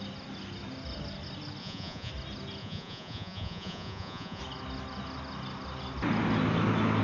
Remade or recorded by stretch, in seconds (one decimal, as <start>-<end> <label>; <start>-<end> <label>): 0.0-1.6 recorded; 1.6-2.1 remade; 2.1-2.6 recorded; 2.6-4.4 remade; 4.4-7.0 recorded